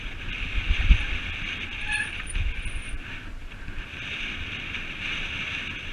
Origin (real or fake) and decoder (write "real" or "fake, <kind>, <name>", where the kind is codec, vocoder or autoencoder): real